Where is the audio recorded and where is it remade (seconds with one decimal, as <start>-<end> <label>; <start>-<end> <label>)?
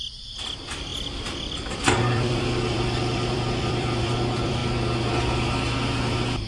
0.0-4.6 remade; 4.6-6.5 recorded